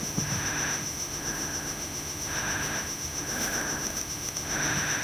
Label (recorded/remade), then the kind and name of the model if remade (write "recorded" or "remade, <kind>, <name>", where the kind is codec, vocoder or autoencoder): remade, autoencoder, DAC-VAE